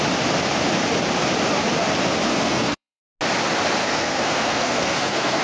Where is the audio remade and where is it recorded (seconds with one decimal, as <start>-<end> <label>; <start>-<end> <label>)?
0.0-2.3 recorded; 2.3-3.0 remade; 3.0-3.8 recorded; 3.8-5.4 remade